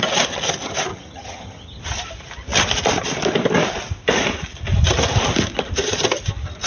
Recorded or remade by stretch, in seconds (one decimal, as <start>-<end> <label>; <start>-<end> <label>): 0.0-0.9 recorded; 0.9-1.8 remade; 1.8-6.7 recorded